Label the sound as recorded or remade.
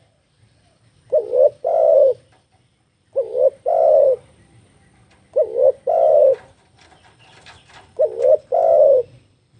remade